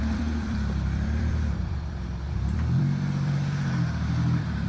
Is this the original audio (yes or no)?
no